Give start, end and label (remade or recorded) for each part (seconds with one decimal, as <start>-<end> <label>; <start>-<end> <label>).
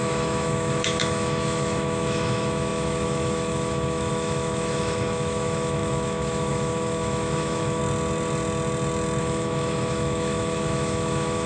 0.0-7.8 remade; 7.8-9.2 recorded; 9.2-11.5 remade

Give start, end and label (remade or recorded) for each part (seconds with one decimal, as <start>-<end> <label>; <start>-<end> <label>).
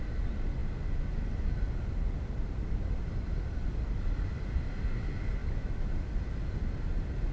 0.0-5.4 recorded; 5.4-6.1 remade; 6.1-7.3 recorded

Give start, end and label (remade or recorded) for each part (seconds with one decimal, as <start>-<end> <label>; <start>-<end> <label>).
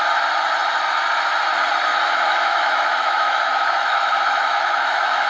0.0-1.9 recorded; 1.9-5.3 remade